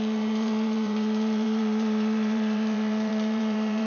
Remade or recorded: remade